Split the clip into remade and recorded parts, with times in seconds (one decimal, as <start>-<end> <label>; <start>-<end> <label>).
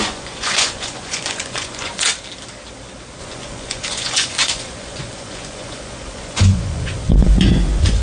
0.0-2.1 remade; 2.1-3.2 recorded; 3.2-8.0 remade